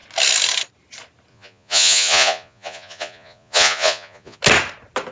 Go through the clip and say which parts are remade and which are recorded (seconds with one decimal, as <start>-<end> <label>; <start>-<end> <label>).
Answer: 0.0-1.3 recorded; 1.3-4.4 remade; 4.4-5.1 recorded